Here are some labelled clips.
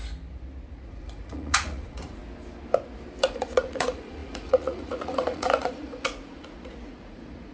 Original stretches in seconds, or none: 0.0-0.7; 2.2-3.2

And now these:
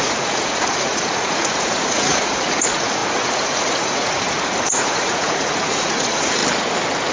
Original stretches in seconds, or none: 6.4-7.1

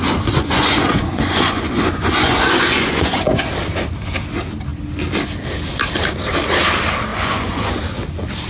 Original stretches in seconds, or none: 0.0-0.4; 3.5-7.1; 7.8-8.5

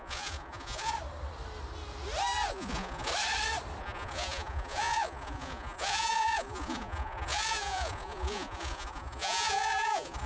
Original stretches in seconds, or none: 0.9-2.5; 3.1-3.8

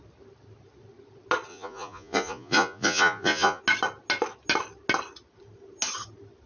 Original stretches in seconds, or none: 0.0-1.5; 3.6-6.5

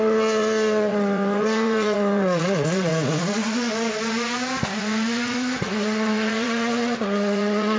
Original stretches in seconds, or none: 2.9-4.8